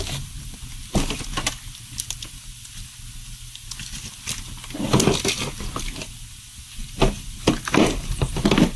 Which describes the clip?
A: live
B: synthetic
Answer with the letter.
A